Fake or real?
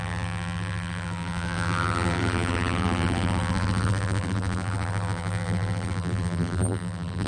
fake